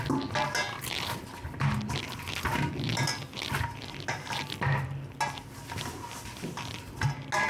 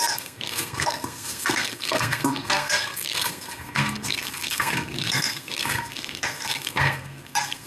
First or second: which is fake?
second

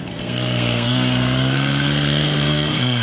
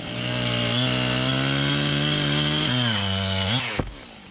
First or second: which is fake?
first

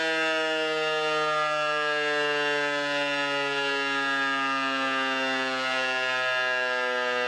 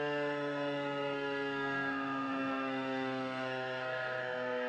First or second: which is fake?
second